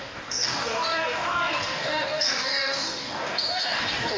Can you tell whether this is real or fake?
fake